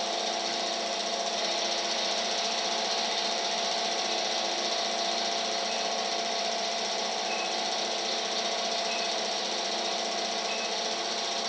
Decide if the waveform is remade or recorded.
recorded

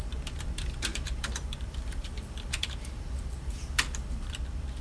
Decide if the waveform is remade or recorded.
remade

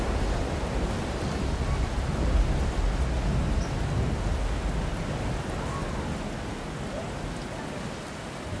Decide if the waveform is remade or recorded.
recorded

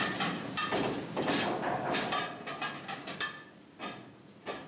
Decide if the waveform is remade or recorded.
recorded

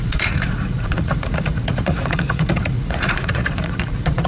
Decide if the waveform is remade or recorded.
remade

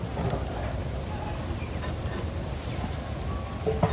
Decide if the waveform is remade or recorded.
recorded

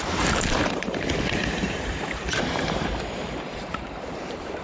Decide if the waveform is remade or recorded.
remade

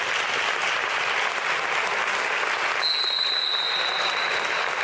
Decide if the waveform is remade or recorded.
recorded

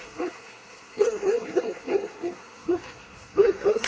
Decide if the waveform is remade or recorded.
remade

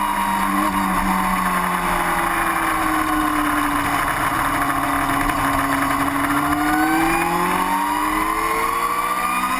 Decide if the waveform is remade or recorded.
recorded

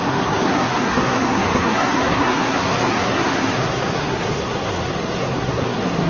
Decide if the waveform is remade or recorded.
remade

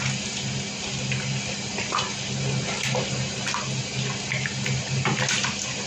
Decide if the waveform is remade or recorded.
recorded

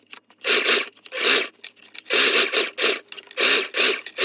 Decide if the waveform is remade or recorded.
recorded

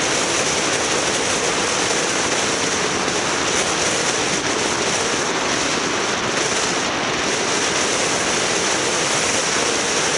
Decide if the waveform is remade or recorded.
recorded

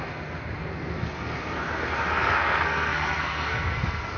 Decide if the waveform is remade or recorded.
remade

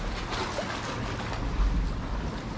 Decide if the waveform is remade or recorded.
recorded